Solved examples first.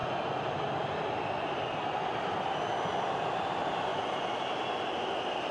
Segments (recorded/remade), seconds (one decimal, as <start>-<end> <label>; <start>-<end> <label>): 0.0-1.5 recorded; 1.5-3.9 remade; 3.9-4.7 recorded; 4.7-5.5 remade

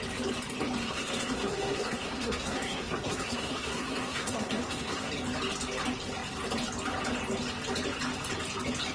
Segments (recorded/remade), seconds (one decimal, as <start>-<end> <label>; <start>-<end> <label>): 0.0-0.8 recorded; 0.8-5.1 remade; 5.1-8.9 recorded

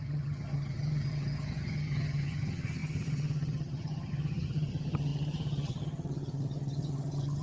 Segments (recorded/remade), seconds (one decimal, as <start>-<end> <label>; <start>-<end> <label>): 0.0-7.4 remade